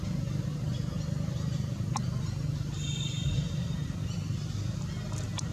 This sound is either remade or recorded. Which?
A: recorded